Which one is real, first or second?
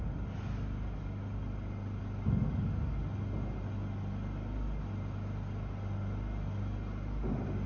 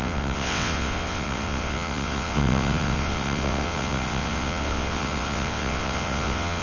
first